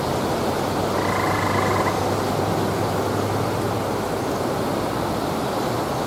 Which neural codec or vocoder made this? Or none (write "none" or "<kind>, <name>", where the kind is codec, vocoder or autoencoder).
none